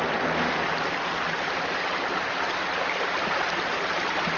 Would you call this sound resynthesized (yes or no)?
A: no